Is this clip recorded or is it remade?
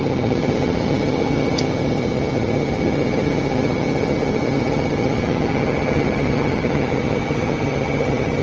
remade